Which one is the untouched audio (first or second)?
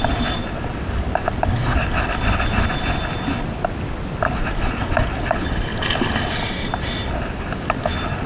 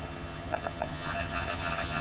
first